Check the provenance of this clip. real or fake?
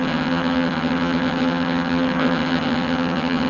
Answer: fake